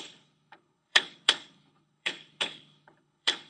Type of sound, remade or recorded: remade